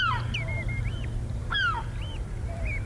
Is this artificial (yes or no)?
no